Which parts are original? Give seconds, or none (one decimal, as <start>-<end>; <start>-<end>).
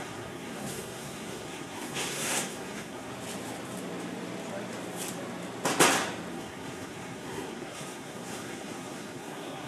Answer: 3.1-6.3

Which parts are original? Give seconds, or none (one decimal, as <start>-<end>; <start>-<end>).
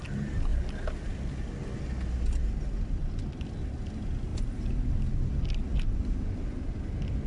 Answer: 0.0-7.3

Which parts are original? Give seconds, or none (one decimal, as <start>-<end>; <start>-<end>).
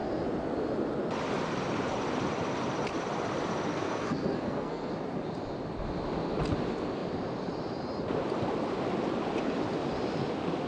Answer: 0.0-3.7; 4.9-10.7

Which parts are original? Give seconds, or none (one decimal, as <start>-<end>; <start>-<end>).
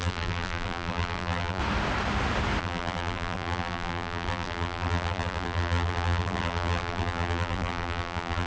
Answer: 1.6-2.6